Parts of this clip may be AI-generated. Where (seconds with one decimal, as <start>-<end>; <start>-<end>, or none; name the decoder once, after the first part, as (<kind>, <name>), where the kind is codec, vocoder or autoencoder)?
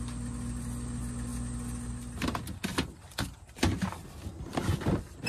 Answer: none